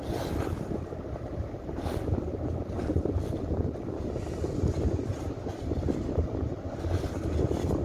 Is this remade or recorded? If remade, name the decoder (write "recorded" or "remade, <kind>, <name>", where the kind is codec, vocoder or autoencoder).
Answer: recorded